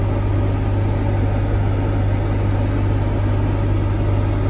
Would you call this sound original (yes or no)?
yes